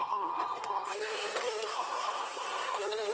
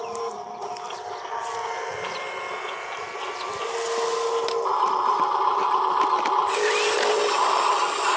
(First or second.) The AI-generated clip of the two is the first